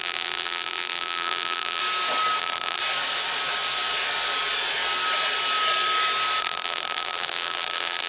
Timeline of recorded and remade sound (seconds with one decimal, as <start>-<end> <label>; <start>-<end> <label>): 0.0-1.8 remade; 1.8-2.4 recorded; 2.4-2.8 remade; 2.8-6.4 recorded; 6.4-8.1 remade